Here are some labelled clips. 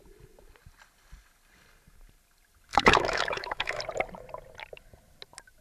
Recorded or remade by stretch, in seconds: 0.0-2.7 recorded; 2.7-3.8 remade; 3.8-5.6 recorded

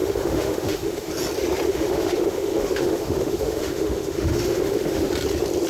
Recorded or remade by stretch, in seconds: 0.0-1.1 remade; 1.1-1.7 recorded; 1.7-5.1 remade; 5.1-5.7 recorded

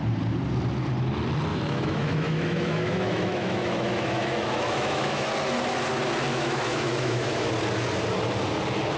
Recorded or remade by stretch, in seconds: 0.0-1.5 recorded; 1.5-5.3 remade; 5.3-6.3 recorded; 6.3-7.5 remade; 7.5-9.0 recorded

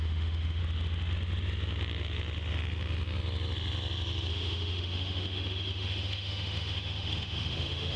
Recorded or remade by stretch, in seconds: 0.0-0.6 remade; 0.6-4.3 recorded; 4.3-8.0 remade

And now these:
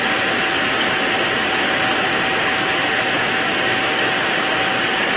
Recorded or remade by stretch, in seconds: 0.0-5.2 recorded

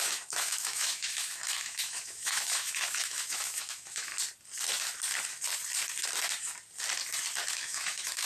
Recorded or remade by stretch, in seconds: 0.0-4.1 remade; 4.1-7.5 recorded; 7.5-8.2 remade

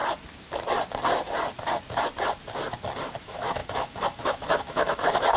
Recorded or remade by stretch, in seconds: 0.0-3.2 recorded; 3.2-5.4 remade

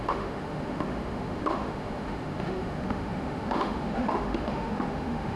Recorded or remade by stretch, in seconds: 0.0-5.4 remade